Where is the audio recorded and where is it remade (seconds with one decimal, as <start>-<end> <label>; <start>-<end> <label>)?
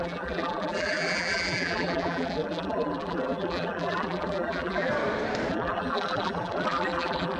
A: 0.0-4.9 remade; 4.9-5.5 recorded; 5.5-7.4 remade